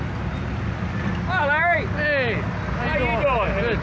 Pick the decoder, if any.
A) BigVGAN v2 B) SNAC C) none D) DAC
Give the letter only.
C